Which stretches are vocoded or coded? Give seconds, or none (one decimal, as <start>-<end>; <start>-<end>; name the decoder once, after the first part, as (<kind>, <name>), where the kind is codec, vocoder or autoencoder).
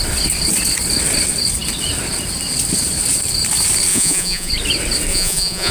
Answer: 3.9-4.5 (vocoder, Vocos); 5.1-5.7